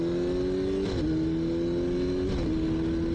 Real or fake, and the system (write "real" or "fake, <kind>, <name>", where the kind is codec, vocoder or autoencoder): real